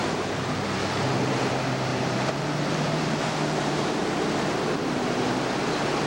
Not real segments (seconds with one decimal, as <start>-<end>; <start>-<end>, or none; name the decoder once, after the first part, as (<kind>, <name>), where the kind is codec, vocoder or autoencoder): 1.9-4.1 (vocoder, BigVGAN v2)